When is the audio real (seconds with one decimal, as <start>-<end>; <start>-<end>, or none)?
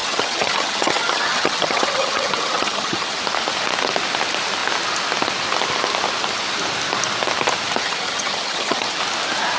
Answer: 3.2-7.8; 9.0-9.6